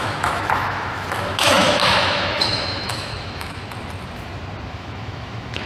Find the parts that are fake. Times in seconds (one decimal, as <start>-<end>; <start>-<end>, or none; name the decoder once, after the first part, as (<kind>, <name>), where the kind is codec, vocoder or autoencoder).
0.0-3.6 (autoencoder, DAC-VAE); 4.7-5.7